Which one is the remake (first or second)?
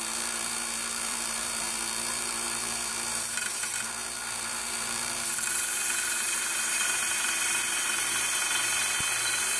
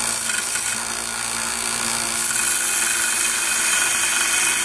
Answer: first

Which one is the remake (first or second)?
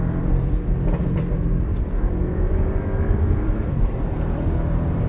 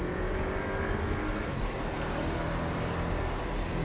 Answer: first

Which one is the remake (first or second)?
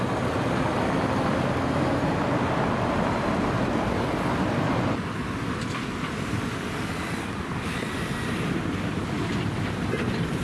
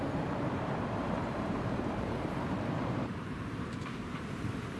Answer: second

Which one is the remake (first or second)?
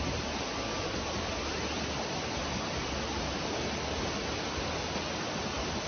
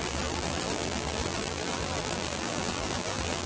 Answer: second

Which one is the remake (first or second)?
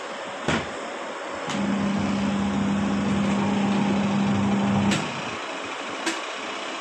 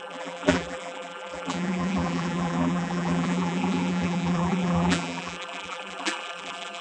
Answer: second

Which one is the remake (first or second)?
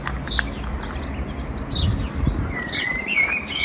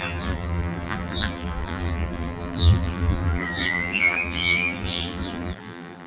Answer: second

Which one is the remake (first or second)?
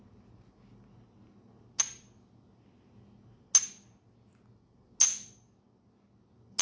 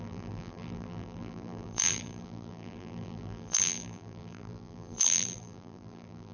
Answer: second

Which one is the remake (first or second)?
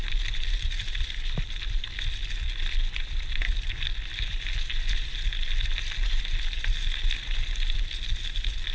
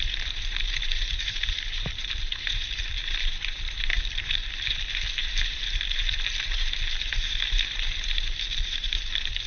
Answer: second